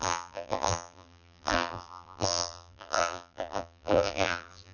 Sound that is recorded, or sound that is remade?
remade